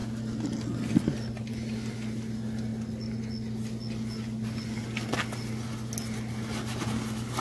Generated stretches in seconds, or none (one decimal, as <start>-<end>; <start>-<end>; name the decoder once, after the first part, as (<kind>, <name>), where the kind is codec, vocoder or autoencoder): none